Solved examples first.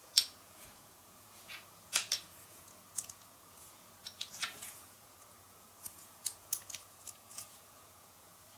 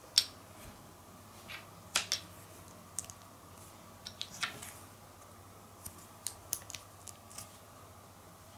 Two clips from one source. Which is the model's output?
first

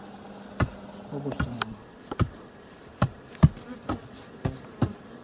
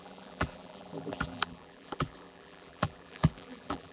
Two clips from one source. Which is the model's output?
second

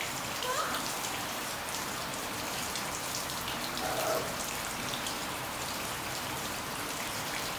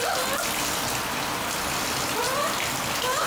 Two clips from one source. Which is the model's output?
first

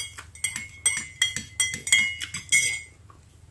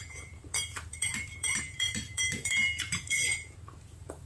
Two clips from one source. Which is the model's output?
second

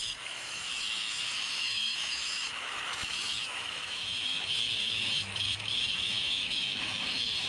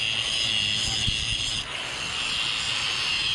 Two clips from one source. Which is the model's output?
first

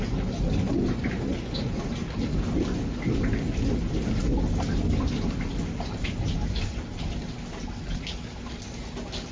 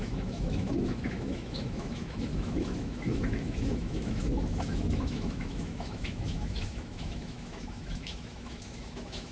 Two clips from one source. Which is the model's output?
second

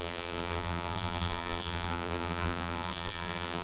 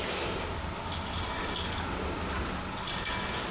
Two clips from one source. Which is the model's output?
first